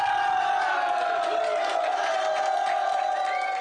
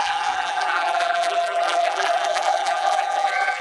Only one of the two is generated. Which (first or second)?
second